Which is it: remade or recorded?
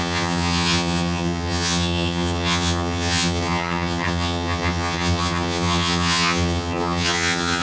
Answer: remade